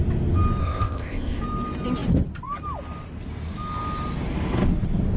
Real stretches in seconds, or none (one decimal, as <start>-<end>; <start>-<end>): 0.0-0.6; 1.4-5.2